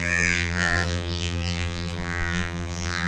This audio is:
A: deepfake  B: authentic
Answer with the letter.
A